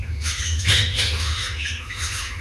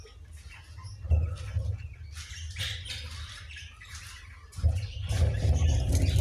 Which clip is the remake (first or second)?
first